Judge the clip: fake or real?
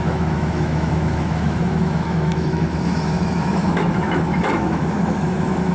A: fake